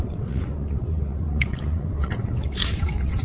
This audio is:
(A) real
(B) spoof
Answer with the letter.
B